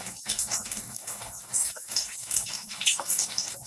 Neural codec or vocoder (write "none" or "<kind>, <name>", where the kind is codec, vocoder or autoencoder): codec, DAC